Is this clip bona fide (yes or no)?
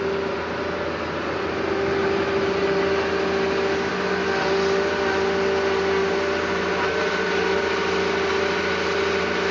yes